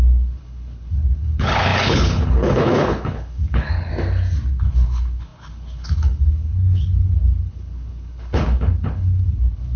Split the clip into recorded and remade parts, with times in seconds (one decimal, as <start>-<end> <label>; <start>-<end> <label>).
0.0-3.9 remade; 3.9-4.5 recorded; 4.5-9.8 remade